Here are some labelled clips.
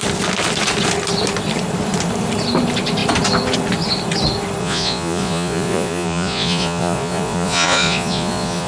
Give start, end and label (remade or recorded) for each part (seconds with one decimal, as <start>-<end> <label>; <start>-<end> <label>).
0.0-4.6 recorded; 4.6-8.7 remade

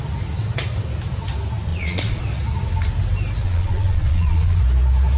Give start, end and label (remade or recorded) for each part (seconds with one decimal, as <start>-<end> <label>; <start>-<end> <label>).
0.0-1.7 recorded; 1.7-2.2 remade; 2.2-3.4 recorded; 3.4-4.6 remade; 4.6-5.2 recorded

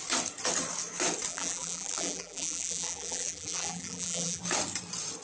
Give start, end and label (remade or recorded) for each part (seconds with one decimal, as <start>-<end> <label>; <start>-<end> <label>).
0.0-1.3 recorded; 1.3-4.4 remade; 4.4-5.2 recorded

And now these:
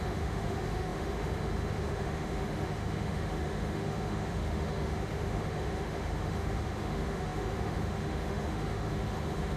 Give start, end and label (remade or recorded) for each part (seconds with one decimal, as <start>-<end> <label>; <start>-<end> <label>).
0.0-9.6 remade

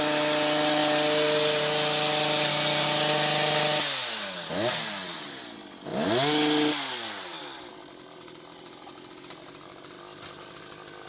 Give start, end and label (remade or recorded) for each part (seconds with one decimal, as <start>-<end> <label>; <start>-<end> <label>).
0.0-11.1 recorded

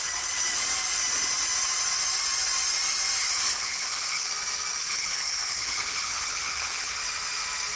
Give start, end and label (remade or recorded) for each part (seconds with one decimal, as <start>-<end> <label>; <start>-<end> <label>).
0.0-3.2 recorded; 3.2-4.3 remade; 4.3-4.8 recorded; 4.8-7.0 remade; 7.0-7.8 recorded